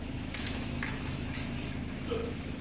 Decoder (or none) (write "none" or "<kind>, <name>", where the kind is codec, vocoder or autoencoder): autoencoder, DAC-VAE